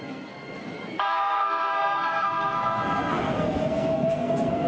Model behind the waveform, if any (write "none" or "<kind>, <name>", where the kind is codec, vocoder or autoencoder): codec, SNAC